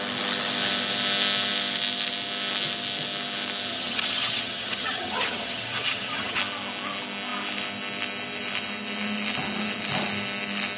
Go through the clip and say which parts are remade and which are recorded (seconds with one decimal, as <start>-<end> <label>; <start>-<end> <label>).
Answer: 0.0-3.7 recorded; 3.7-6.4 remade; 6.4-10.8 recorded